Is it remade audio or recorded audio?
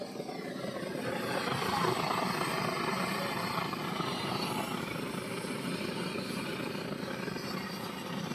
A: recorded